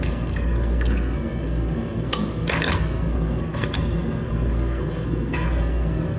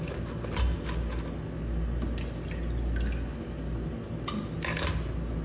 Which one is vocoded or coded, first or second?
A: first